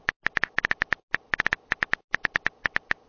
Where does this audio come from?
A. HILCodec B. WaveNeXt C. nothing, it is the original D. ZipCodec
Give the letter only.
C